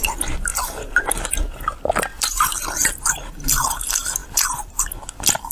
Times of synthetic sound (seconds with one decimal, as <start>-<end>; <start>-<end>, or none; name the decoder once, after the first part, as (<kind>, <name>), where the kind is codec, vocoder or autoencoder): 0.5-1.3 (vocoder, BigVGAN v2); 2.1-2.6; 4.2-4.8